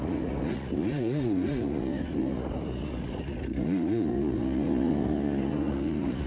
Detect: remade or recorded remade